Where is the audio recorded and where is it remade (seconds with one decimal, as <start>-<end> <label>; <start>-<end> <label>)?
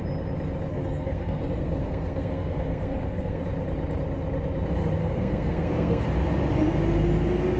0.0-0.7 recorded; 0.7-3.4 remade; 3.4-5.0 recorded; 5.0-6.0 remade; 6.0-7.6 recorded